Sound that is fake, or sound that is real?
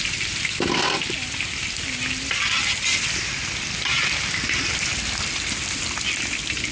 real